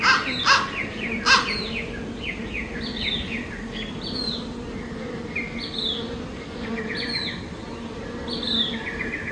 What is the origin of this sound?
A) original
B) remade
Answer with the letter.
A